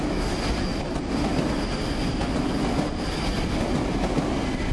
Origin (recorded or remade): recorded